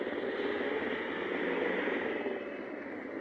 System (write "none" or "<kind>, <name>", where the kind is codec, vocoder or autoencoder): none